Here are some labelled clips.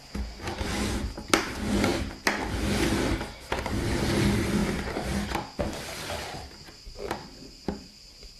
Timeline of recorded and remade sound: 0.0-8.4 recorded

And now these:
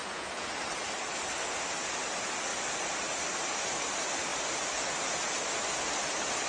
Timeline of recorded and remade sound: 0.0-0.5 remade; 0.5-6.5 recorded